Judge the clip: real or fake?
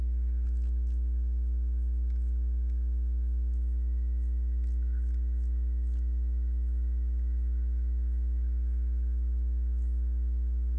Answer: fake